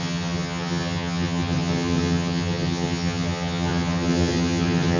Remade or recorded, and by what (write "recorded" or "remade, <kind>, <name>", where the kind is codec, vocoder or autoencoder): remade, vocoder, HiFi-GAN